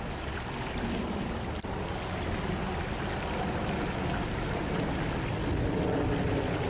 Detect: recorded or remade recorded